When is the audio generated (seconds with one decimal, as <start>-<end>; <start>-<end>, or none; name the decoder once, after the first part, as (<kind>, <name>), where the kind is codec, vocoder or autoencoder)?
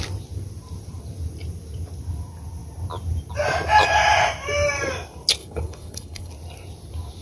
5.4-6.3 (codec, HILCodec)